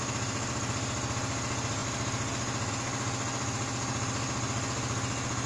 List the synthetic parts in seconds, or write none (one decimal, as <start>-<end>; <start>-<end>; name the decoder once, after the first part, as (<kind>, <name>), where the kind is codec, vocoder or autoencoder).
none